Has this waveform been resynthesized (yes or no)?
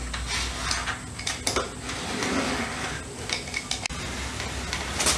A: no